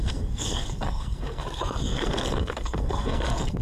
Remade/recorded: remade